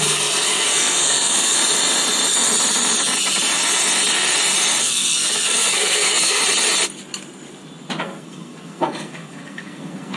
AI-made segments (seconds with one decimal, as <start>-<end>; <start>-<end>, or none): 0.0-1.6; 4.8-6.4; 8.0-10.2